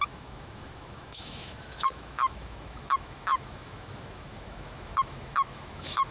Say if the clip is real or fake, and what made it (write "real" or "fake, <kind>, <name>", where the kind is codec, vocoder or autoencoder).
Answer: fake, autoencoder, DAC-VAE